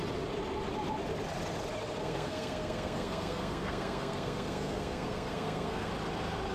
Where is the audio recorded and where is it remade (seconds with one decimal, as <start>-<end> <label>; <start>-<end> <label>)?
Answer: 0.0-2.0 recorded; 2.0-5.9 remade; 5.9-6.5 recorded

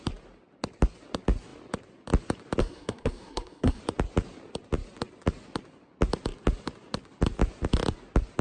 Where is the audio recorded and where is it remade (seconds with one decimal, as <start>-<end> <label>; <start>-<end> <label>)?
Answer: 0.0-2.6 recorded; 2.6-3.8 remade; 3.8-8.4 recorded

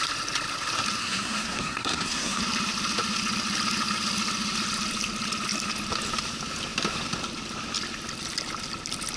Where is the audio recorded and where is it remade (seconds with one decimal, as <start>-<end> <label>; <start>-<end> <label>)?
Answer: 0.0-1.0 recorded; 1.0-2.4 remade; 2.4-9.2 recorded

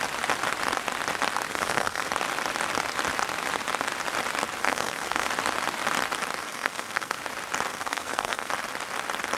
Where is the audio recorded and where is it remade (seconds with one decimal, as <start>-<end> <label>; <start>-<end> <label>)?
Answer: 0.0-1.5 recorded; 1.5-2.1 remade; 2.1-4.6 recorded; 4.6-5.3 remade; 5.3-6.4 recorded; 6.4-7.2 remade; 7.2-7.7 recorded; 7.7-8.5 remade; 8.5-9.4 recorded

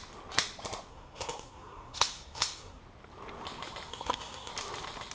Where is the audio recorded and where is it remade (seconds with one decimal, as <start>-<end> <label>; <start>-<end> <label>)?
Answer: 0.0-0.9 recorded; 0.9-2.8 remade; 2.8-3.9 recorded; 3.9-4.5 remade; 4.5-5.1 recorded

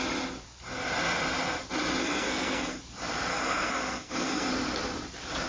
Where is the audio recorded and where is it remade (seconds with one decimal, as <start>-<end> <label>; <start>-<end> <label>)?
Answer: 0.0-2.0 recorded; 2.0-2.8 remade; 2.8-3.3 recorded; 3.3-4.5 remade; 4.5-5.5 recorded

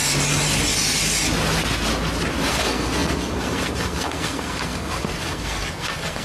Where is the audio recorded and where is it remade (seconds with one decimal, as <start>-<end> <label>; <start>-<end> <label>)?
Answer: 0.0-2.5 recorded; 2.5-6.2 remade